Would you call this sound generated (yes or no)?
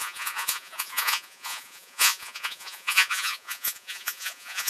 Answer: yes